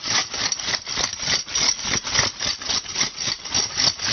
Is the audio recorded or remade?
recorded